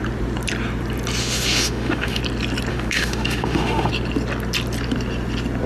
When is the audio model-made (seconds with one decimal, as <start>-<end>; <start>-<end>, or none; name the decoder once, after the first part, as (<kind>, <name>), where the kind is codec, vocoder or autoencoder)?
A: 1.2-2.2 (autoencoder, DAC-VAE); 2.7-3.9